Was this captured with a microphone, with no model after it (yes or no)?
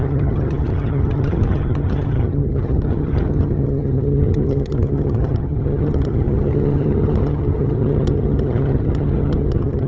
no